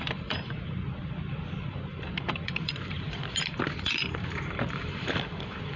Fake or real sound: fake